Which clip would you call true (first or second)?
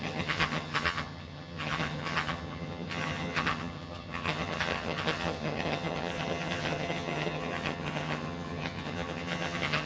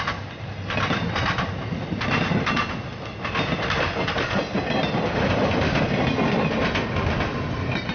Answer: second